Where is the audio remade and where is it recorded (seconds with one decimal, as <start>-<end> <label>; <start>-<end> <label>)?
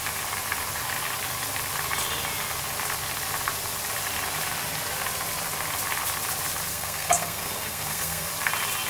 0.0-6.7 recorded; 6.7-8.3 remade; 8.3-8.9 recorded